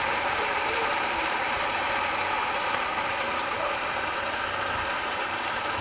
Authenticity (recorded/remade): remade